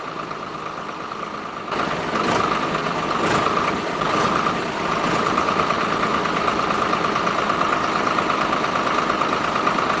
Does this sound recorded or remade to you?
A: recorded